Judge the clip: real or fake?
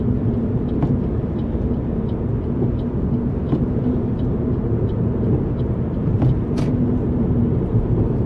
fake